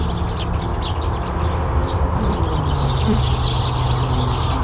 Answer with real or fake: real